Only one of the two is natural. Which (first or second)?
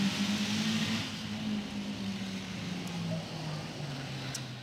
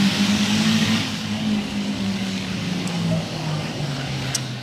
first